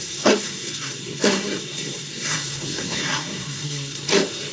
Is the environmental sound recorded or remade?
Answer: remade